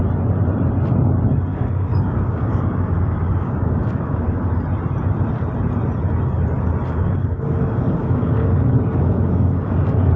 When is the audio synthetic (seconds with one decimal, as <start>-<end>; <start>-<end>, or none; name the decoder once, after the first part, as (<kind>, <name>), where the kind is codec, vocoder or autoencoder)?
1.5-4.5 (codec, DAC); 6.9-10.2